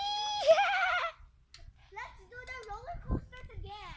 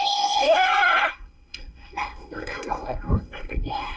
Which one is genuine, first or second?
first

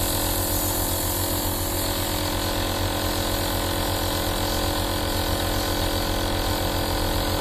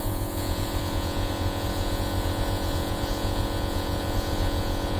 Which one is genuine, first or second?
first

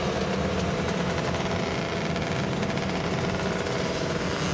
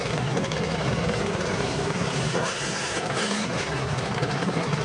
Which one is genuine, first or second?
first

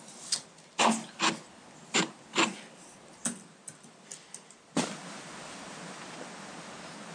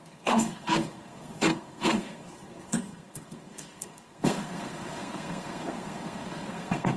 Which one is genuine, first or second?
first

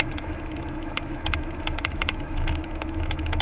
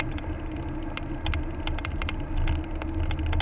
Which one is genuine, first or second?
second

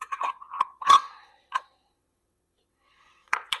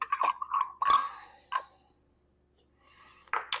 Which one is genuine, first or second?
second